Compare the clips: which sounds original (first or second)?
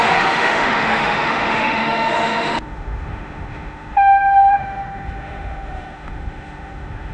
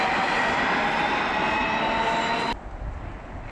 second